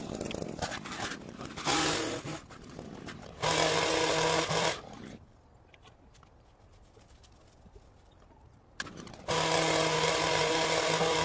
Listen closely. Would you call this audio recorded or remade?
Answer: recorded